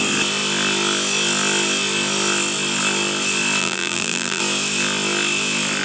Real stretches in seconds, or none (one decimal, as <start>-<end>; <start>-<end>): 0.0-3.6; 4.4-5.8